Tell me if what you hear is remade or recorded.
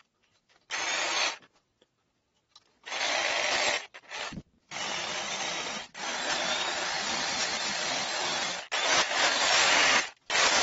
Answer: recorded